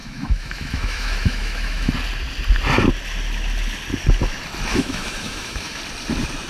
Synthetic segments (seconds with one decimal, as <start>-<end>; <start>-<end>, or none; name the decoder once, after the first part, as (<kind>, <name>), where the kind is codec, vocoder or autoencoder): 0.0-1.9 (autoencoder, DAC-VAE); 4.7-5.8